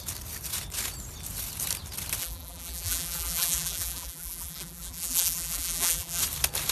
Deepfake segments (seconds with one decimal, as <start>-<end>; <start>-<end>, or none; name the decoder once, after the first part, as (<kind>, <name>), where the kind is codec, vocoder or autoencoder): 2.2-6.2 (vocoder, BigVGAN v2)

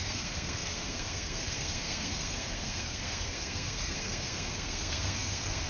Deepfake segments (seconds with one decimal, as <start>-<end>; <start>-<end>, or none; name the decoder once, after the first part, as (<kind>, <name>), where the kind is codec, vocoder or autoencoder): 0.0-5.7 (codec, SNAC)

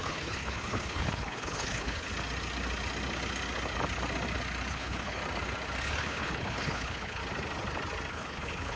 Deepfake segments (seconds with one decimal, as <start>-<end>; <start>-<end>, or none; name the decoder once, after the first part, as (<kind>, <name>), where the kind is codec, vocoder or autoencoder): 0.0-2.1 (codec, HILCodec); 4.7-5.2; 5.8-7.2; 8.1-8.8

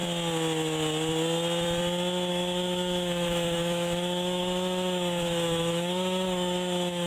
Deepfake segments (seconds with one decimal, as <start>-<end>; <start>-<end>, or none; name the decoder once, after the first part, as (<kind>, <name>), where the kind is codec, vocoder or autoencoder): 2.3-7.1 (autoencoder, DAC-VAE)

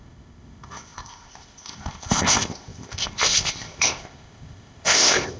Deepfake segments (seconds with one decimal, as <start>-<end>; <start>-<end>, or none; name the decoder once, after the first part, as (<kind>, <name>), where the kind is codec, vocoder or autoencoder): 0.0-5.4 (codec, ZipCodec)

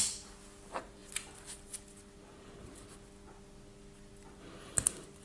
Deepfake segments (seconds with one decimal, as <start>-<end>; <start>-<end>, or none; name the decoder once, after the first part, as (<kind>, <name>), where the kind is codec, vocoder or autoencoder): none

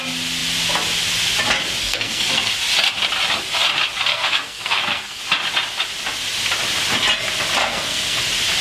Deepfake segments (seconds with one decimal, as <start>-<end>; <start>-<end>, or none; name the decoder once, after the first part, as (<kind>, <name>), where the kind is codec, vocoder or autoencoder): 1.8-2.5 (codec, SNAC); 4.1-5.2; 7.6-8.2

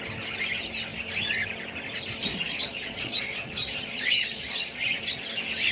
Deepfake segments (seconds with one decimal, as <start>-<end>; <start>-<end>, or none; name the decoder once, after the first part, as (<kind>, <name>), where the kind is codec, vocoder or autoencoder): 2.3-4.8 (vocoder, Vocos)